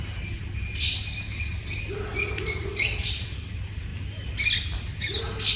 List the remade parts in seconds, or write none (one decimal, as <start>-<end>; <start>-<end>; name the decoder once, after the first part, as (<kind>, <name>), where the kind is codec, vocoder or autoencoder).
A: 2.1-3.3 (vocoder, BigVGAN v2)